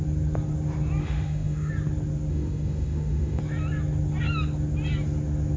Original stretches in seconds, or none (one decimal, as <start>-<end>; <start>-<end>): 0.0-1.0; 1.7-2.3; 3.4-5.6